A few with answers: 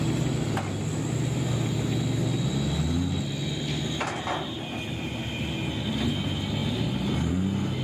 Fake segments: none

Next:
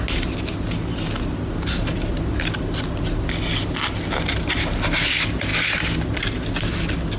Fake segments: none

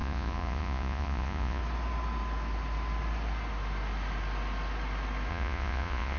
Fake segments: 0.0-1.6; 5.3-6.2

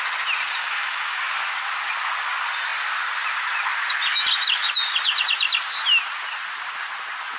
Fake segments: 0.6-1.2

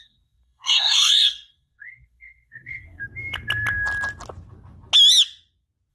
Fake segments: 0.0-3.0

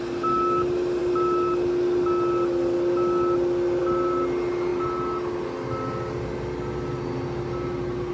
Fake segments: none

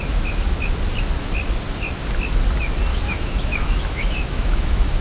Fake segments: 2.9-5.0

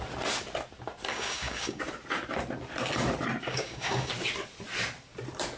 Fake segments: 1.1-1.8; 3.5-4.1